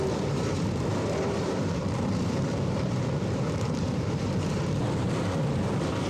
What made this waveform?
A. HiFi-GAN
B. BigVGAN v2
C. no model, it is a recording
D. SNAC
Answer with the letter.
B